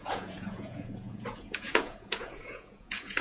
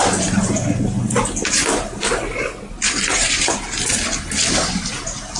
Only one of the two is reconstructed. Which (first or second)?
first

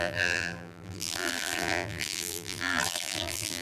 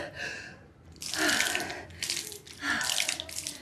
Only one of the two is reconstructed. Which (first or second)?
first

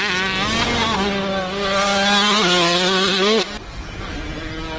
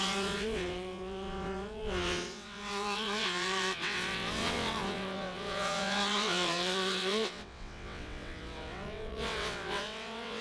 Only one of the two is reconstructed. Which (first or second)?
second